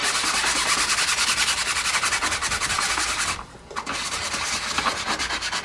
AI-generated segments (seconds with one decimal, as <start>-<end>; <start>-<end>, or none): none